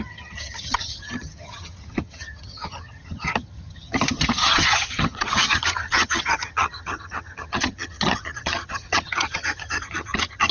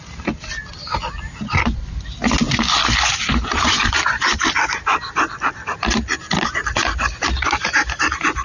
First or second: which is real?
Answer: second